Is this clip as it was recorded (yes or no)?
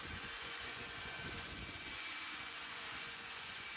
no